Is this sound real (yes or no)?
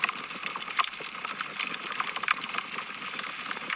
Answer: yes